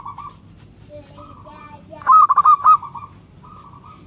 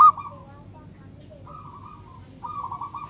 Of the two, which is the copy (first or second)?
first